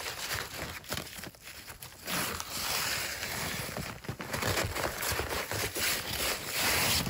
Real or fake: fake